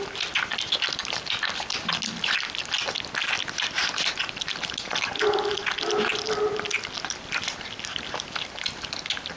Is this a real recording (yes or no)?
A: yes